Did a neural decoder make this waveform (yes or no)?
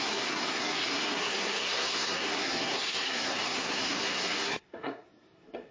yes